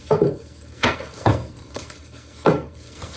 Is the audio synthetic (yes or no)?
yes